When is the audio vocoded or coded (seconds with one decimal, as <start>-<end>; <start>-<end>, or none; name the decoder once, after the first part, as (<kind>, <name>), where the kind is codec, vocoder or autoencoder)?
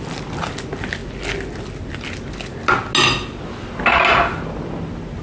none